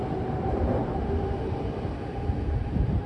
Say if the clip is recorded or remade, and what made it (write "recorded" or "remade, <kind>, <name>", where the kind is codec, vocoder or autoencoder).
remade, vocoder, BigVGAN v2